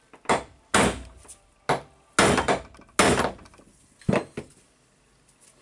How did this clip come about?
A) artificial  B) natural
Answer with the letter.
B